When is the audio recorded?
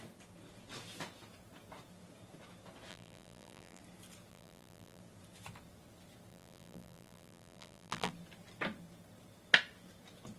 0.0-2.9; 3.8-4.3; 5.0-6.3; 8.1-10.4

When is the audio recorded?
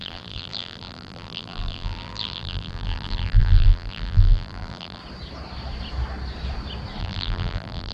5.0-7.0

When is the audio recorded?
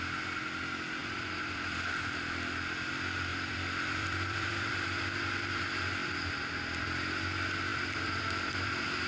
0.0-1.0; 1.9-3.3; 5.2-6.0; 7.1-7.7; 8.7-9.1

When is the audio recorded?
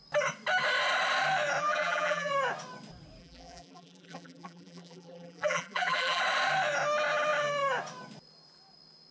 0.0-1.6; 2.3-3.2; 6.2-9.1